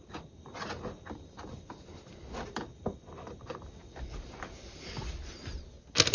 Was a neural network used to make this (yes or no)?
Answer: no